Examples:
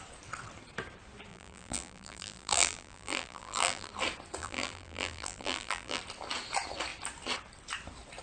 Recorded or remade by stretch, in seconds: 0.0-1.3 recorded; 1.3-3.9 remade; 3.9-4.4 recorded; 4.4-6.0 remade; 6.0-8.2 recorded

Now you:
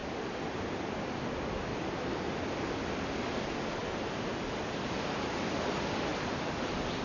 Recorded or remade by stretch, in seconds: 0.0-3.1 remade; 3.1-3.8 recorded; 3.8-4.3 remade; 4.3-6.1 recorded; 6.1-7.0 remade

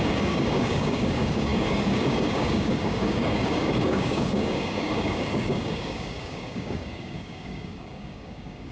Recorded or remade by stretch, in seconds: 0.0-8.7 remade

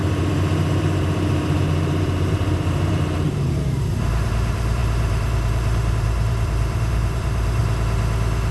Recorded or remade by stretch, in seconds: 0.0-7.6 remade; 7.6-8.5 recorded

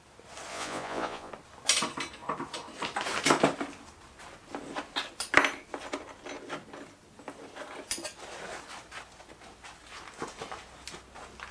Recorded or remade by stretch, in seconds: 0.0-0.5 recorded; 0.5-1.3 remade; 1.3-11.5 recorded

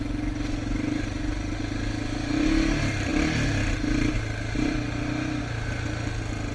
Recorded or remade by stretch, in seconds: 0.0-6.5 recorded

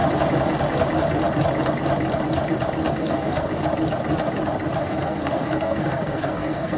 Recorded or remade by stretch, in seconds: 0.0-2.9 recorded; 2.9-3.5 remade; 3.5-4.8 recorded; 4.8-6.8 remade